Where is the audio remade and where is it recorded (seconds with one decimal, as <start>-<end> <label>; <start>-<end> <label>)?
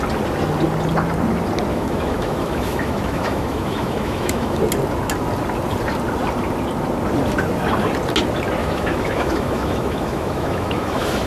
0.0-1.7 recorded; 1.7-4.6 remade; 4.6-8.6 recorded; 8.6-11.3 remade